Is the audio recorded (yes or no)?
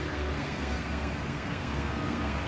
no